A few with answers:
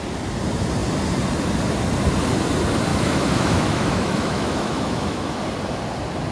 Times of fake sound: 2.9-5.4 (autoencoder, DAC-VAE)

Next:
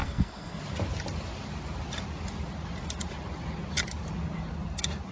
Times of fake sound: 0.0-0.6 (codec, SNAC)

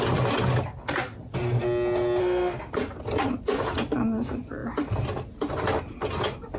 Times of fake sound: 2.2-2.7 (autoencoder, DAC-VAE)

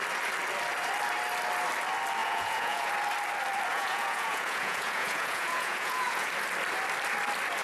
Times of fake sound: 2.2-2.9 (vocoder, Vocos); 3.7-6.3

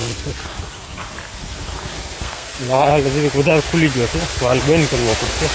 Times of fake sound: 2.2-2.9 (codec, SNAC)